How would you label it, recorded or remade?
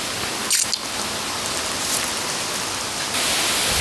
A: recorded